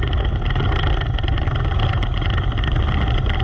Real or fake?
real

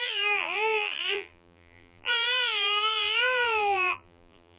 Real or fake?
fake